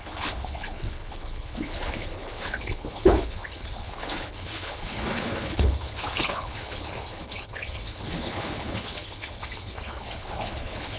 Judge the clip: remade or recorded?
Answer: remade